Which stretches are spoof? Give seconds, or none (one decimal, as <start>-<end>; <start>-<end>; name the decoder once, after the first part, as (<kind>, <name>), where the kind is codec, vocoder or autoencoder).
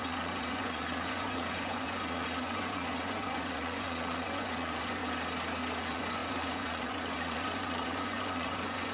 0.0-5.0 (vocoder, Vocos); 5.8-8.9